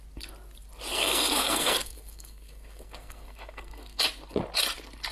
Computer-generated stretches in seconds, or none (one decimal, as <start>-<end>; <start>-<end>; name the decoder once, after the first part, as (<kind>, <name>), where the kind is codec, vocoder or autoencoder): 0.9-4.0 (codec, SNAC)